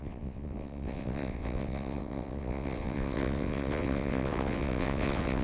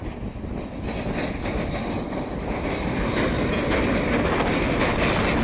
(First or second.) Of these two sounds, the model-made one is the first